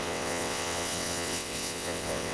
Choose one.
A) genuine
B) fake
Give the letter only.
B